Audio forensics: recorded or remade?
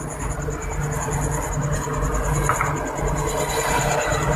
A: recorded